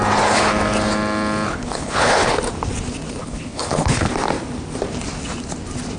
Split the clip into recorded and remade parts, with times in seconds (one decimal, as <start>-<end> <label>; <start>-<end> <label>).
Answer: 0.0-1.5 recorded; 1.5-2.3 remade; 2.3-3.2 recorded; 3.2-4.1 remade; 4.1-6.0 recorded